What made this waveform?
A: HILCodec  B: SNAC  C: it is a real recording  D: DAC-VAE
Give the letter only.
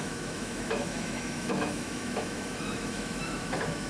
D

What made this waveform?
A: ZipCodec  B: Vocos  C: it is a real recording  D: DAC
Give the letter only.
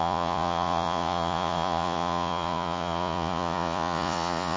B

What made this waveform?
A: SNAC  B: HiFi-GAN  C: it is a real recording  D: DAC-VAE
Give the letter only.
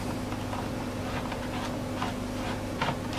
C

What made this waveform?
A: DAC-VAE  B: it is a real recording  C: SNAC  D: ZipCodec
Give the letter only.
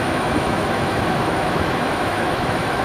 A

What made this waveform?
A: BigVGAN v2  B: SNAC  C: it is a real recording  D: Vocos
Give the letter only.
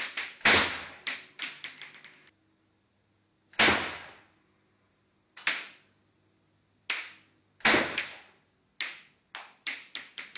C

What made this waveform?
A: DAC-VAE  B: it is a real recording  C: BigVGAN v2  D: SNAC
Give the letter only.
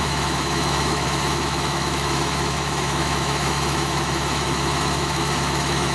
A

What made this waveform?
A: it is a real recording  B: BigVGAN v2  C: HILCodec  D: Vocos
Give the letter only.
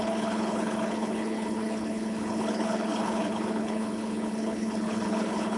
C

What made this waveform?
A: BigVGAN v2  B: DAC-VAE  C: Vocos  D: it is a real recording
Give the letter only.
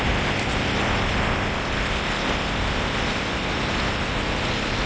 D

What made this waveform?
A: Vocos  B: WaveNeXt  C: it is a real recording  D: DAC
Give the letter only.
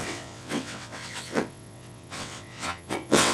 B